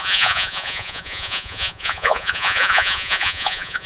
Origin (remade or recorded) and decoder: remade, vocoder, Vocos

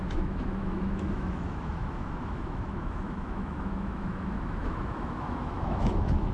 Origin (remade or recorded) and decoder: remade, autoencoder, DAC-VAE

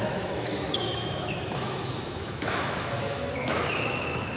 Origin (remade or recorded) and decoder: remade, autoencoder, DAC-VAE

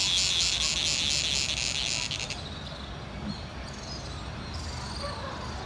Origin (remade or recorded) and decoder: recorded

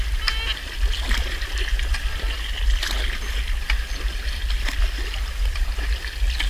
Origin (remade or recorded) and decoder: recorded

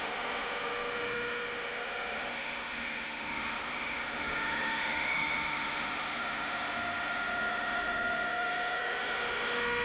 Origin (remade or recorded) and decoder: remade, autoencoder, DAC-VAE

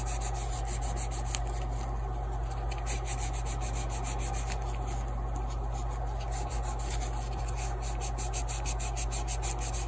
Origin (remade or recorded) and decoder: recorded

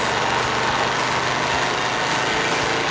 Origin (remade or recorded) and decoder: recorded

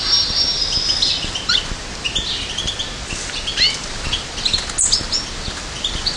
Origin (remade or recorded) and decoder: recorded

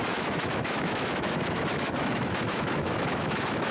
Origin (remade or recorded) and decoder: remade, autoencoder, DAC-VAE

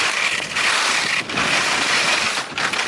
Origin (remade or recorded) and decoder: remade, vocoder, BigVGAN v2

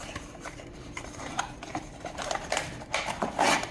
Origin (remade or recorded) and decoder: remade, vocoder, BigVGAN v2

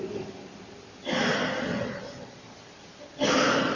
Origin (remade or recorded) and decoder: recorded